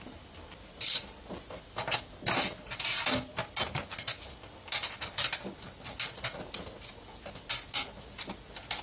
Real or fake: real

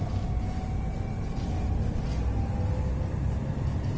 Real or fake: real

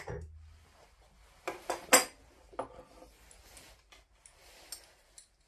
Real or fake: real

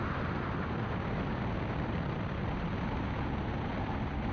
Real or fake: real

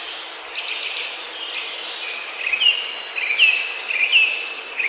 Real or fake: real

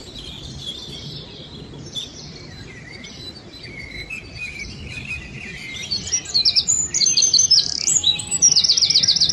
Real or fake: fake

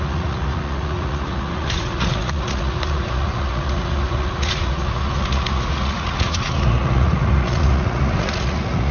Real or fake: fake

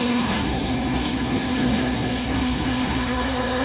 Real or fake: fake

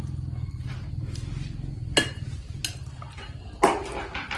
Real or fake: real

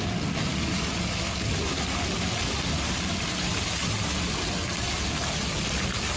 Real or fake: real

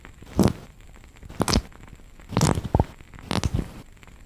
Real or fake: real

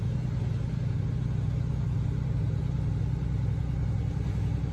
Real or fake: real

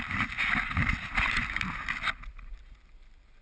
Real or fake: real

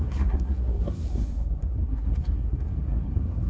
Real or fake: fake